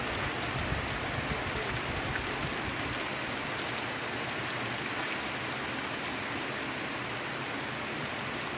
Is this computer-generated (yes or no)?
no